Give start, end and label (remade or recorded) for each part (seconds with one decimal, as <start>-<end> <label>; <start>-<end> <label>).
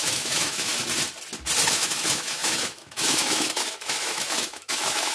0.0-0.7 remade; 0.7-1.7 recorded; 1.7-5.1 remade